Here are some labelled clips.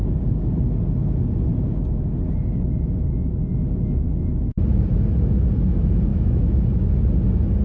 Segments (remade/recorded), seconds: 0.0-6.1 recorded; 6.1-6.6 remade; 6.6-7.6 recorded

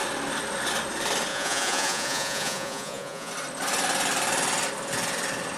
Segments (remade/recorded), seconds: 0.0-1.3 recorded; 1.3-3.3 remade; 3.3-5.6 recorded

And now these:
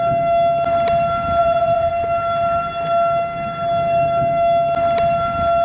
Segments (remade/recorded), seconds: 0.0-1.4 recorded; 1.4-1.9 remade; 1.9-5.6 recorded

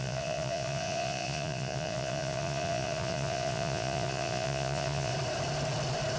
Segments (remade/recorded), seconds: 0.0-5.1 remade; 5.1-6.2 recorded

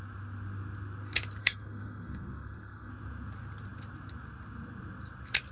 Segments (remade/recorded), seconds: 0.0-1.4 recorded; 1.4-2.9 remade; 2.9-5.5 recorded